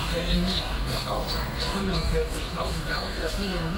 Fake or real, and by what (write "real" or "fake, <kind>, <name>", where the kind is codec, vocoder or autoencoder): fake, codec, DAC